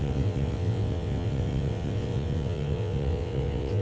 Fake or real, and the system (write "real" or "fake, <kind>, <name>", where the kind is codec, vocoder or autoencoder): fake, vocoder, WaveNeXt